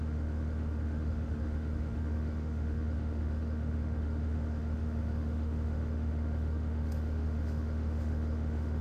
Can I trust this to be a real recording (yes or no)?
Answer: no